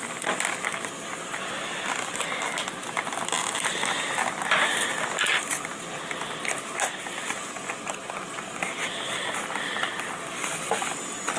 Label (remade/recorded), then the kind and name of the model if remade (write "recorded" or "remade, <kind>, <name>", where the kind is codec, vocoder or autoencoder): recorded